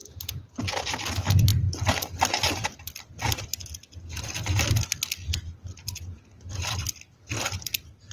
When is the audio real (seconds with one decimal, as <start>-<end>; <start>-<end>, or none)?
0.6-8.1